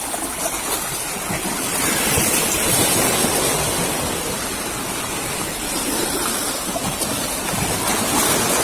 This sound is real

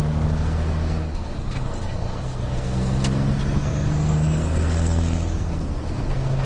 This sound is fake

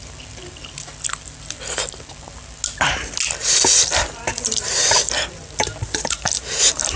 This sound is real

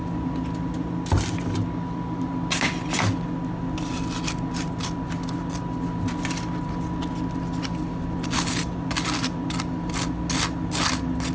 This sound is real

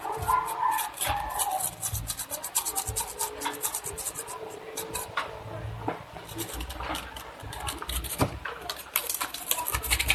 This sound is fake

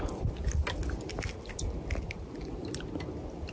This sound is real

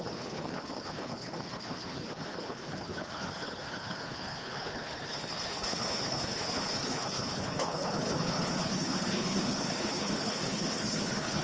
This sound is fake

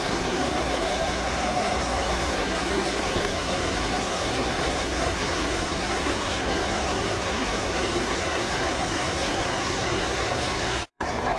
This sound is fake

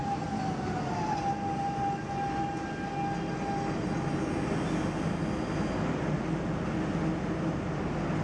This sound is real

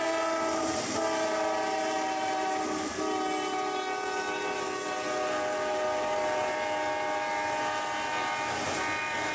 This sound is real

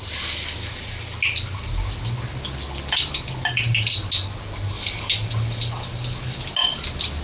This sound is real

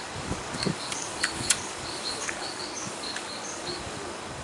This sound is fake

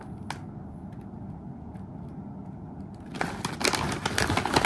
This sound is real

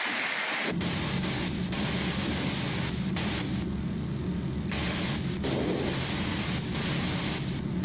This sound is real